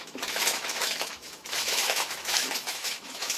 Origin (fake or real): fake